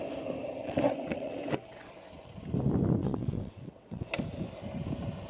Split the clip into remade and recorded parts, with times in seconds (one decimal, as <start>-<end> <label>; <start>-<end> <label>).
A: 0.0-0.6 recorded; 0.6-1.9 remade; 1.9-3.0 recorded; 3.0-4.1 remade; 4.1-5.3 recorded